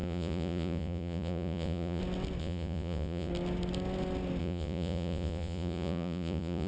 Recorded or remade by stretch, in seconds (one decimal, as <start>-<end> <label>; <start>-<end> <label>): 0.0-2.0 remade; 2.0-2.4 recorded; 2.4-3.3 remade; 3.3-4.4 recorded; 4.4-6.7 remade